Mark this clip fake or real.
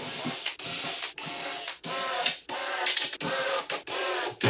real